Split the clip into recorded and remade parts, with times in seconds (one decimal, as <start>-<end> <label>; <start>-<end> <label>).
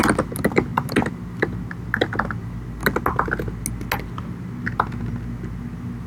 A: 0.0-6.1 recorded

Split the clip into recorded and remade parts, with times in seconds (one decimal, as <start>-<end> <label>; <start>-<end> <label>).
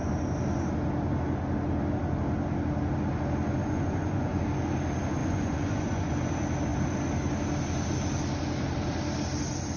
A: 0.0-3.6 recorded; 3.6-4.4 remade; 4.4-5.2 recorded; 5.2-6.1 remade; 6.1-9.8 recorded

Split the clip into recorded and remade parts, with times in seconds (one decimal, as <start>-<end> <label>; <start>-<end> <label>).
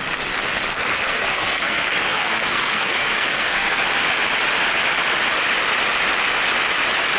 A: 0.0-0.7 recorded; 0.7-3.8 remade; 3.8-7.2 recorded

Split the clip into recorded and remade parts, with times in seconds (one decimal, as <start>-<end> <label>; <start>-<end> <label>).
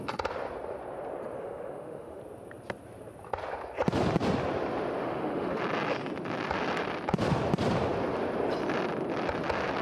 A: 0.0-1.4 recorded; 1.4-2.2 remade; 2.2-5.0 recorded; 5.0-5.6 remade; 5.6-9.8 recorded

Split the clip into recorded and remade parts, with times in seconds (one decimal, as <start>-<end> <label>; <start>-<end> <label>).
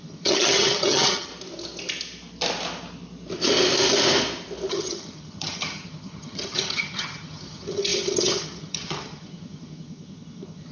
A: 0.0-1.3 remade; 1.3-4.7 recorded; 4.7-10.7 remade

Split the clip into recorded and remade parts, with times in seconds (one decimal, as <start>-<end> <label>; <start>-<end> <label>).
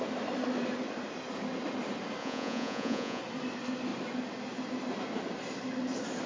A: 0.0-2.2 recorded; 2.2-3.2 remade; 3.2-6.3 recorded